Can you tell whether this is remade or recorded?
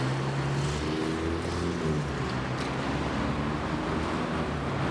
recorded